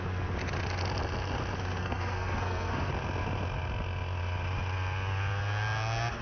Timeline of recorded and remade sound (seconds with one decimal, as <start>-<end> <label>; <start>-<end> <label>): 0.0-1.8 recorded; 1.8-2.9 remade; 2.9-6.2 recorded